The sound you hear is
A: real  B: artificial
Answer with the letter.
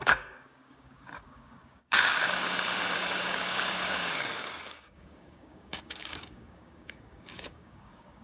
B